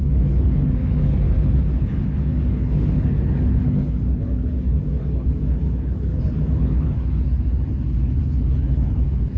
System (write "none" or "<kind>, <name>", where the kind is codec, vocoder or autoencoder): codec, HILCodec